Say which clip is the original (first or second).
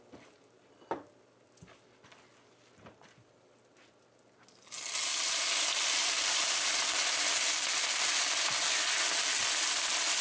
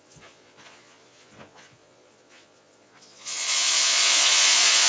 first